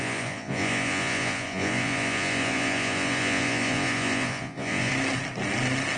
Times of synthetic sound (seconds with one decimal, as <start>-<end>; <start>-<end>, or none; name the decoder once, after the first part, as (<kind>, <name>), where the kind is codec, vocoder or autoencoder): 0.0-4.9 (vocoder, Vocos)